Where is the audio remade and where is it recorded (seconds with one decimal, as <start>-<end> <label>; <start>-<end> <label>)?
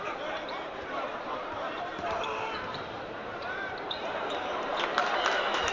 0.0-5.7 remade